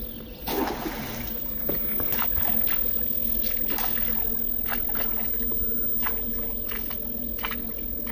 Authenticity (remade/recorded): recorded